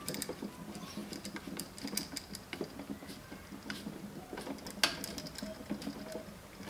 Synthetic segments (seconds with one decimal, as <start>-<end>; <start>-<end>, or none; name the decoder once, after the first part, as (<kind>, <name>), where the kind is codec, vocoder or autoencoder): none